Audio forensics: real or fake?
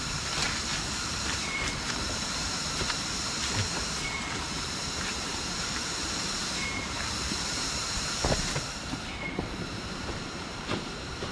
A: fake